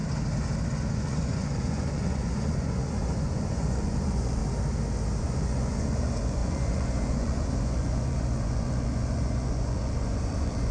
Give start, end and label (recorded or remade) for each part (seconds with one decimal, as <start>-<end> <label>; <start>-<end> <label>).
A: 0.0-0.9 recorded; 0.9-4.4 remade; 4.4-5.2 recorded; 5.2-10.7 remade